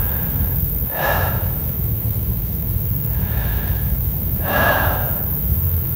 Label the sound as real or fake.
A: fake